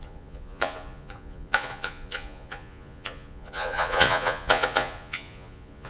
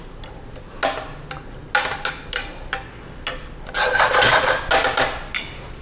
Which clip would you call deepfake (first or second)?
first